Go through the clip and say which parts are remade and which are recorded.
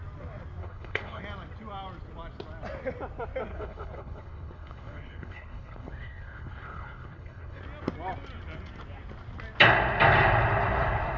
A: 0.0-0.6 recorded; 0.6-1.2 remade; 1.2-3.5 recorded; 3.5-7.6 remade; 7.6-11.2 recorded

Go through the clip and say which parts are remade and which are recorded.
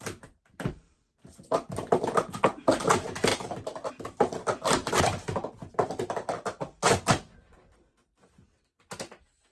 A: 0.0-9.5 recorded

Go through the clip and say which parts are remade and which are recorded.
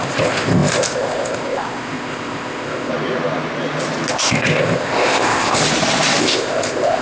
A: 0.0-2.9 remade; 2.9-4.1 recorded; 4.1-5.6 remade; 5.6-6.2 recorded; 6.2-7.0 remade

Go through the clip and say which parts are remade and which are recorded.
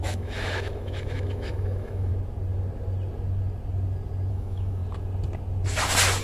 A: 0.0-2.1 remade; 2.1-4.3 recorded; 4.3-4.8 remade; 4.8-6.2 recorded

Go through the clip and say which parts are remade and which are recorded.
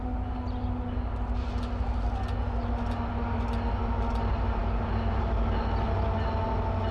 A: 0.0-6.9 recorded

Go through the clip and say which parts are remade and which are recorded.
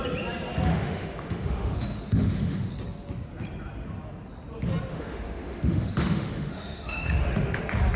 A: 0.0-0.7 recorded; 0.7-2.7 remade; 2.7-4.9 recorded; 4.9-7.6 remade; 7.6-8.0 recorded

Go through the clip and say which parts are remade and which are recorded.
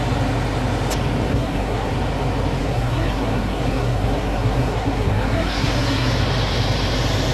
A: 0.0-1.3 recorded; 1.3-1.9 remade; 1.9-2.6 recorded; 2.6-6.1 remade; 6.1-7.3 recorded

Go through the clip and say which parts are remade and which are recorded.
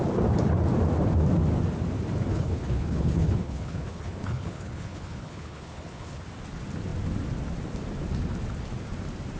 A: 0.0-2.3 recorded; 2.3-6.2 remade; 6.2-9.4 recorded